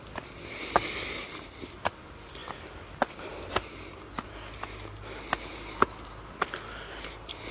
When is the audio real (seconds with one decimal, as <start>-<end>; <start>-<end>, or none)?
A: 0.0-7.5